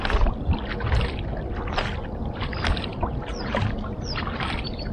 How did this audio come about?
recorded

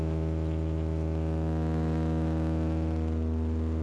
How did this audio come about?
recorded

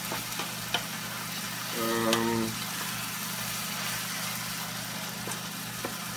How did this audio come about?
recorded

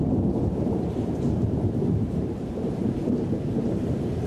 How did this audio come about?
remade